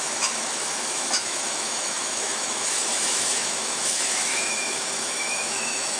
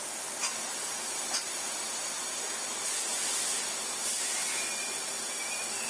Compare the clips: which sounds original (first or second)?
second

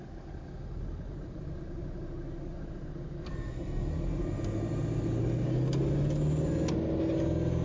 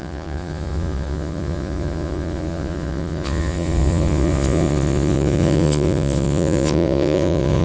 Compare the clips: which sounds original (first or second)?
first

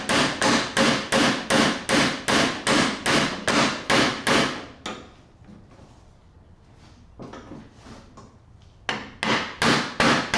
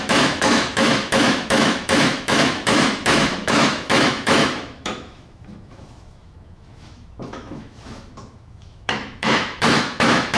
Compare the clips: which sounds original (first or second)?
first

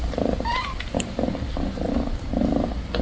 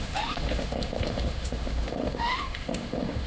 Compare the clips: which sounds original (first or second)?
first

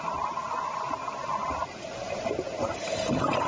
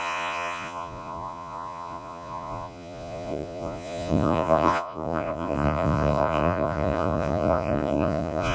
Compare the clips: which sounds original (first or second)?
first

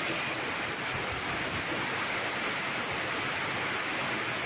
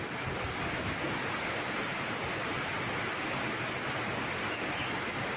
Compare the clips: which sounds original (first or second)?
second